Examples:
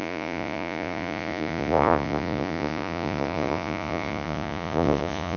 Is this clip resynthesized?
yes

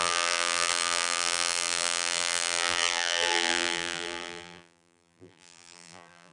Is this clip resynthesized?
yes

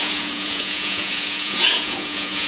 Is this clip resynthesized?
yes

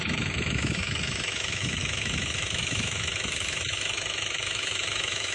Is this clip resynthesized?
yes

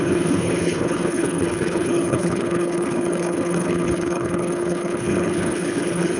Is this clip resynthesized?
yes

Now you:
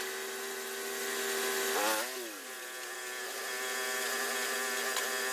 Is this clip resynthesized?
no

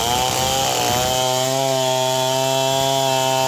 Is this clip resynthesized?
no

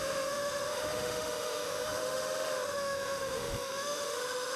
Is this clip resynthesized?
yes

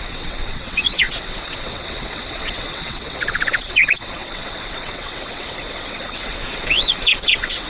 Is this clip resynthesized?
yes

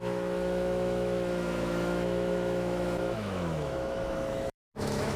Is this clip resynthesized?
yes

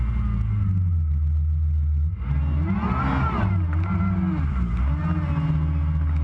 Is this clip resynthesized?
no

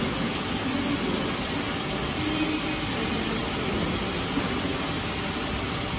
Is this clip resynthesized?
no